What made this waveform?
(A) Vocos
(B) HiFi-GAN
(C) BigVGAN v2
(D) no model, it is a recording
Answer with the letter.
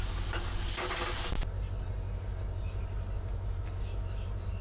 D